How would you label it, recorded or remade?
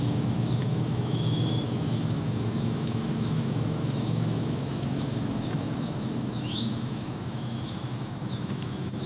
remade